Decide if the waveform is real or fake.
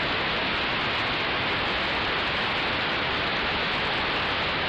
real